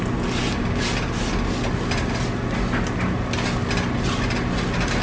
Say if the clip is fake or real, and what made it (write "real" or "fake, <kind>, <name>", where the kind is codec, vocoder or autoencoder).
real